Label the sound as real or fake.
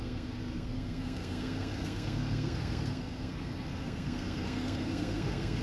fake